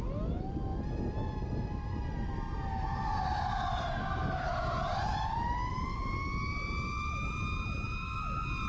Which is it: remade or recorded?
recorded